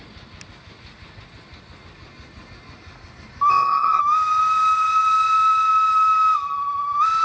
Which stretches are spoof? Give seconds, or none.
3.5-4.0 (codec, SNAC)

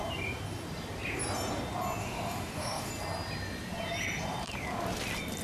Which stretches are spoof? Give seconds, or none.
2.0-2.9 (autoencoder, DAC-VAE)